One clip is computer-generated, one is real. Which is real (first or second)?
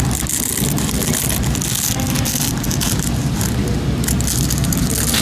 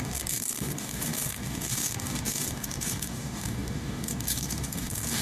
first